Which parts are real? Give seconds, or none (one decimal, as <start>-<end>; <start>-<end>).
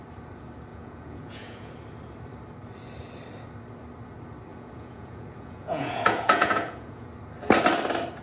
0.0-0.7; 1.7-4.5; 7.1-8.2